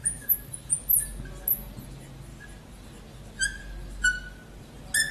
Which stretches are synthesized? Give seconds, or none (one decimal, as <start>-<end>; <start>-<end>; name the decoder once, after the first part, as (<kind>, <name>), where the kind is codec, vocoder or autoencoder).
0.0-0.8 (vocoder, BigVGAN v2)